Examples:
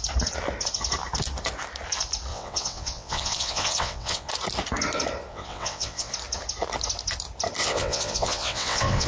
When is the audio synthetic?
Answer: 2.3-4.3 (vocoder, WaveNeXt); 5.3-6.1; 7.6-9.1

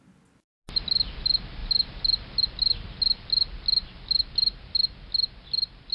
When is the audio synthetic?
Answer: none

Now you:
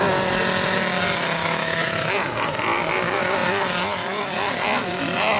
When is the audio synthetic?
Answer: 1.4-2.1 (autoencoder, DAC-VAE)

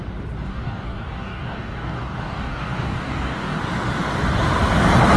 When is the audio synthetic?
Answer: 0.5-3.6 (codec, DAC)

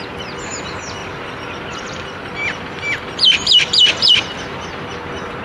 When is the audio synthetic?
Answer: 1.0-4.2 (vocoder, BigVGAN v2)

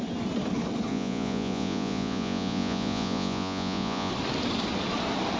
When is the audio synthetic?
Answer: 0.9-4.1 (vocoder, Vocos)

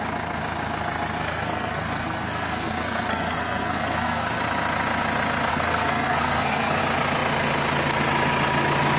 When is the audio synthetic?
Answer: 1.2-4.4 (codec, SNAC); 5.5-6.8

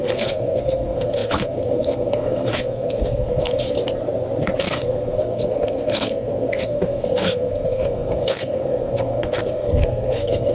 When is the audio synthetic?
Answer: 0.0-3.8 (codec, SNAC); 4.6-10.5